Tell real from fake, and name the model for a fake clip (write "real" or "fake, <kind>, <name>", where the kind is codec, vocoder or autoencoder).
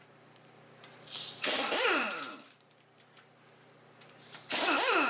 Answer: fake, vocoder, BigVGAN v2